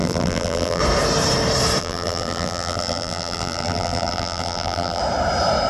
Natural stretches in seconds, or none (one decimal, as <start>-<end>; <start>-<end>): 0.8-1.8; 5.0-5.7